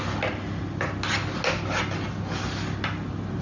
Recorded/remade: recorded